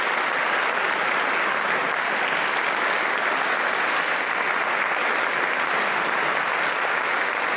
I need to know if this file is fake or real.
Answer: real